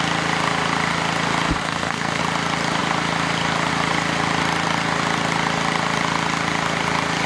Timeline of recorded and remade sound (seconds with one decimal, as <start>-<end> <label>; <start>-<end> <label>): 0.0-1.6 recorded; 1.6-2.2 remade; 2.2-7.3 recorded